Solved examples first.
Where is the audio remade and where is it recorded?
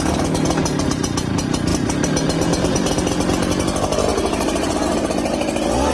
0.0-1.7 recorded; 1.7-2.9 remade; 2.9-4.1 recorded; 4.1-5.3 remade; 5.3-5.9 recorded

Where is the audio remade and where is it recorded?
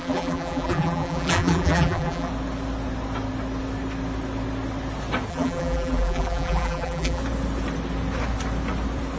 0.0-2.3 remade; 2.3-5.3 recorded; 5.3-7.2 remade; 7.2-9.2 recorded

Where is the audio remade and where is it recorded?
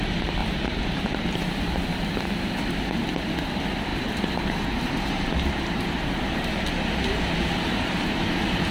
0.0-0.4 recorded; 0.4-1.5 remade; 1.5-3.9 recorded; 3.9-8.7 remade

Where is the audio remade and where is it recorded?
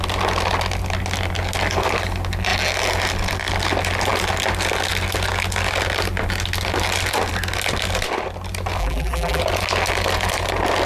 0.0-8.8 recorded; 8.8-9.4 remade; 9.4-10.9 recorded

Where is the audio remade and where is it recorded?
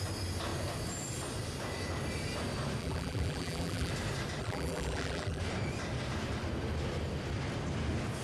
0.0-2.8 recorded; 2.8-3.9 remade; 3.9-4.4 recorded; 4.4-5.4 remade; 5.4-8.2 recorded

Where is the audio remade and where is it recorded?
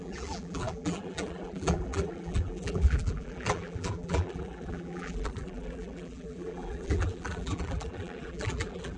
0.0-9.0 remade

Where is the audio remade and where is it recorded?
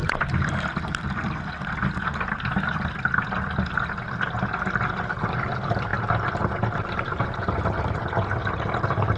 0.0-5.1 recorded; 5.1-5.9 remade; 5.9-6.8 recorded; 6.8-8.4 remade; 8.4-9.2 recorded